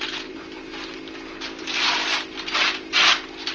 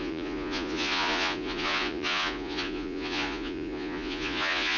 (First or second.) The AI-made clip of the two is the second